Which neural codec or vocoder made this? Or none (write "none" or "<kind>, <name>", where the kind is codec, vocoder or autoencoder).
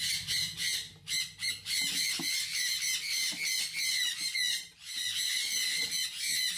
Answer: none